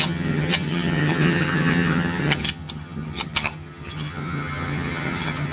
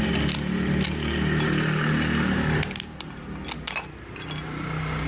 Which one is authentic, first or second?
second